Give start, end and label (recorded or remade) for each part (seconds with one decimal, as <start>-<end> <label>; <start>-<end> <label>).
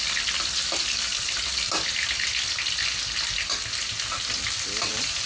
0.0-5.3 recorded